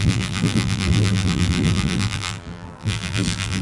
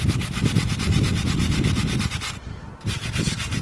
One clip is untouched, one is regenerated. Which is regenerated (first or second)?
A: first